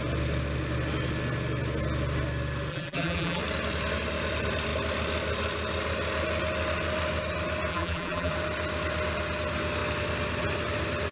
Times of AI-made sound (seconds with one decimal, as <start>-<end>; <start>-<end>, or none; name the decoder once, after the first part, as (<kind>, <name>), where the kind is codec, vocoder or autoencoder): 2.7-3.4 (vocoder, BigVGAN v2); 7.7-8.3